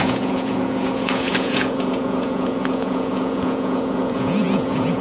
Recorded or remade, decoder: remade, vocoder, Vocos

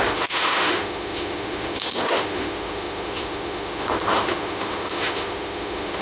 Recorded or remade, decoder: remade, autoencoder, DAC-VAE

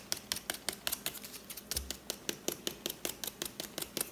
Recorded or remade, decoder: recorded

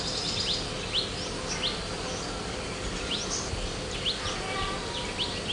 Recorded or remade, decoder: recorded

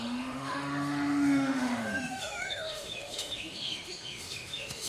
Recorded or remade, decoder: remade, autoencoder, DAC-VAE